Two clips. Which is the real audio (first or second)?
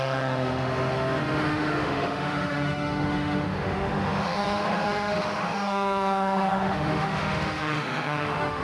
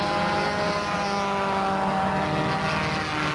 second